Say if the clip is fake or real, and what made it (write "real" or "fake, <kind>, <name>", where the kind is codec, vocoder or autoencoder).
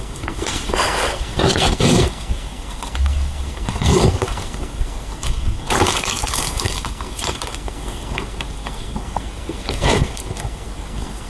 fake, codec, SNAC